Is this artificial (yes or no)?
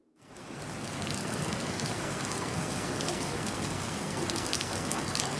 yes